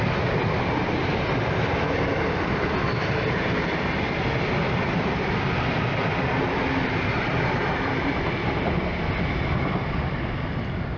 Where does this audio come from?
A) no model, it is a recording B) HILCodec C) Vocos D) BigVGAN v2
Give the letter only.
A